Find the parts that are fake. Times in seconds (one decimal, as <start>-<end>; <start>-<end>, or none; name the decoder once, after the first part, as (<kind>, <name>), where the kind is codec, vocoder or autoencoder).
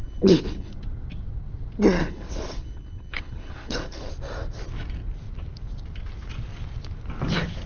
0.0-0.7 (codec, HILCodec); 2.0-4.1